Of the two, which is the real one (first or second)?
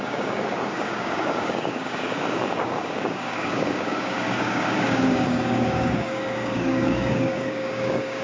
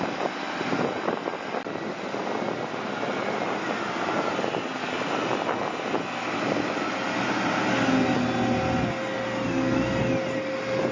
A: second